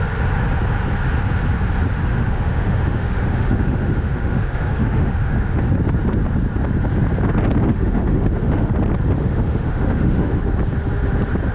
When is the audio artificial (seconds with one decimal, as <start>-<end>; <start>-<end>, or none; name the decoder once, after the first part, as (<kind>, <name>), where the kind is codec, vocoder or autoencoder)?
2.1-5.6 (autoencoder, DAC-VAE); 7.7-8.7; 9.2-10.4